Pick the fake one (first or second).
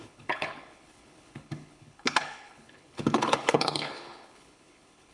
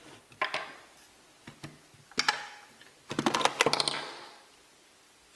first